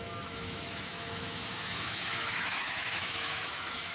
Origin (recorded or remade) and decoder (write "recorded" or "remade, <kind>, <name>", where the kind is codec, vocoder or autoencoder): remade, autoencoder, DAC-VAE